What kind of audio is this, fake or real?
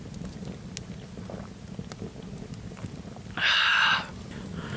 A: real